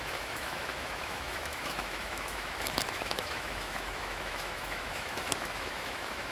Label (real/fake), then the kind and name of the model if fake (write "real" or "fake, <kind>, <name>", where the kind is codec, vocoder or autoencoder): fake, autoencoder, DAC-VAE